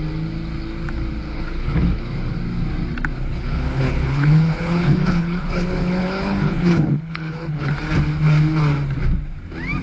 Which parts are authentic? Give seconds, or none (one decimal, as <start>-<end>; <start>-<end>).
0.0-1.3; 2.0-3.3; 7.7-9.8